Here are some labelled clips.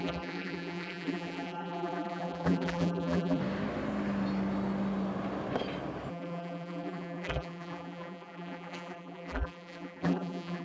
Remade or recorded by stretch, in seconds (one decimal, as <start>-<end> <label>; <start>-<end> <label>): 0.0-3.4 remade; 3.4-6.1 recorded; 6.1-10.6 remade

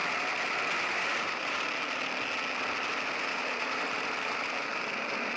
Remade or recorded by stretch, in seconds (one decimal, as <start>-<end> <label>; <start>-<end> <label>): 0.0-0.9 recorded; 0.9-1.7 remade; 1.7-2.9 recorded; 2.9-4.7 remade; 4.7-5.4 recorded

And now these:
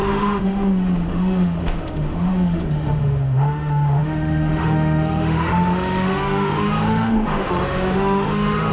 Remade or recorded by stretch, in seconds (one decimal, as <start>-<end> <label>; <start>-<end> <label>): 0.0-8.7 remade

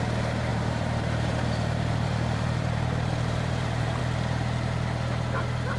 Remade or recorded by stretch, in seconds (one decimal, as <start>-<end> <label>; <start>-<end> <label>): 0.0-0.5 recorded; 0.5-4.0 remade; 4.0-5.8 recorded

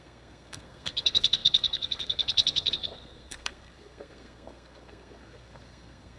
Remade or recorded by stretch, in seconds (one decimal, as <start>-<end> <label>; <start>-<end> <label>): 0.0-6.2 remade